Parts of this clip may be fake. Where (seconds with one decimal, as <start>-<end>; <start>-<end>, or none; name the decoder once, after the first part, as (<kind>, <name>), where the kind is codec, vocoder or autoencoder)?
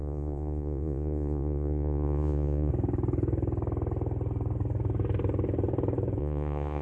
0.0-2.7 (vocoder, Vocos); 6.2-6.8